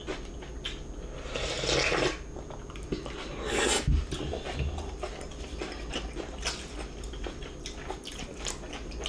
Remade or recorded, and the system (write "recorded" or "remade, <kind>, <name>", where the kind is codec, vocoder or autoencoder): recorded